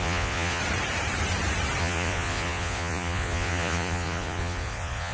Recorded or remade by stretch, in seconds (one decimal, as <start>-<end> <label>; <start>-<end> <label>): 0.0-0.6 remade; 0.6-1.8 recorded; 1.8-5.1 remade